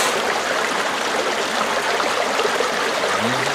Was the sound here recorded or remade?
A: recorded